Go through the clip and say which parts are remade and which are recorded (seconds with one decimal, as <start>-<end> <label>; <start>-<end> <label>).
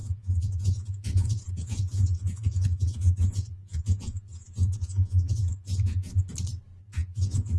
0.0-6.2 remade; 6.2-6.8 recorded; 6.8-7.6 remade